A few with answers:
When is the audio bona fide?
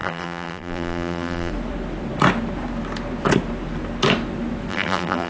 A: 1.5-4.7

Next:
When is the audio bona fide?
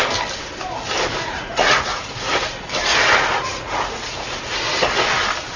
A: 0.0-1.3; 2.3-3.5; 4.4-5.6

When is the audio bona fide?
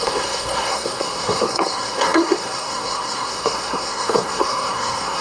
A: none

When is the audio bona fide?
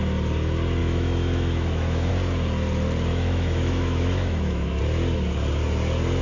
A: 0.0-0.8; 2.1-3.1; 4.8-6.2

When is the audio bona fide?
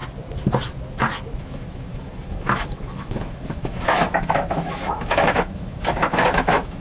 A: 0.0-1.4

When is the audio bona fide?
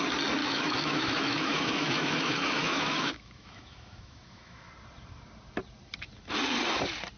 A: 0.0-0.4; 4.7-7.2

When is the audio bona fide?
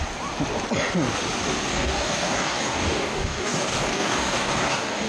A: 0.0-1.7